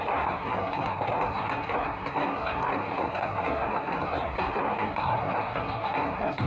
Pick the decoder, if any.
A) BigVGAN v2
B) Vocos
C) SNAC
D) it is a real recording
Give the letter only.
C